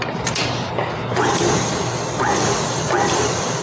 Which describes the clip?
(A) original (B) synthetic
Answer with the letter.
A